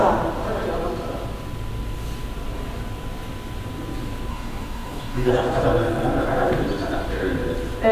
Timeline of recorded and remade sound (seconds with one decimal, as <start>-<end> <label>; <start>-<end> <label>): 0.0-4.3 recorded; 4.3-5.3 remade; 5.3-7.9 recorded